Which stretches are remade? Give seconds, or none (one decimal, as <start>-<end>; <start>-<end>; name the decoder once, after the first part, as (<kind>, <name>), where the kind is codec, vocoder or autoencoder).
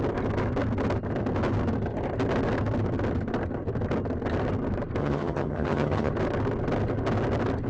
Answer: 5.0-6.1 (vocoder, HiFi-GAN)